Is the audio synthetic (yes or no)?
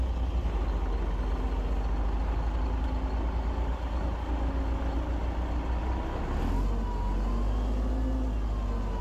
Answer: no